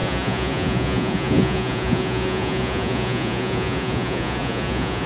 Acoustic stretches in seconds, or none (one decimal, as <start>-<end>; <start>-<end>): none